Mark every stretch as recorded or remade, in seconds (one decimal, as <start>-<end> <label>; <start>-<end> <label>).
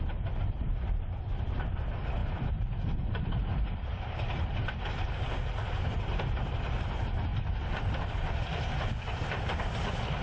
0.0-2.2 recorded; 2.2-5.1 remade; 5.1-10.2 recorded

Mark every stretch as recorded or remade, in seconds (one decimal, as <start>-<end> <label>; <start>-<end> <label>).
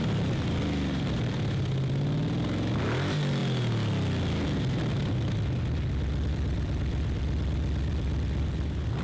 0.0-3.4 remade; 3.4-6.3 recorded; 6.3-9.0 remade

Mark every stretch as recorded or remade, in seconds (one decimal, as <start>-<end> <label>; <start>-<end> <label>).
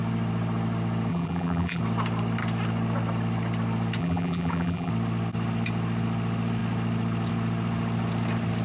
0.0-1.1 recorded; 1.1-1.8 remade; 1.8-4.0 recorded; 4.0-4.9 remade; 4.9-8.6 recorded